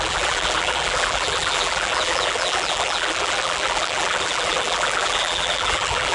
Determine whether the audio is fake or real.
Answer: fake